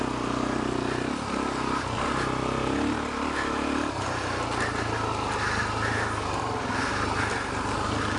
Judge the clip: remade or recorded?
recorded